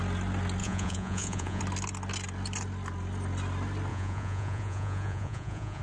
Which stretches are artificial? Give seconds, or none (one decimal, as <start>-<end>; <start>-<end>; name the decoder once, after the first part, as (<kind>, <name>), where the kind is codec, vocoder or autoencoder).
0.6-1.6 (vocoder, Vocos); 3.9-5.8